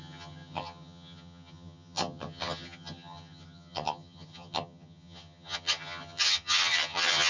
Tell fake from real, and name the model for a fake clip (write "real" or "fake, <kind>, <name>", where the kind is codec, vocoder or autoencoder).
fake, vocoder, HiFi-GAN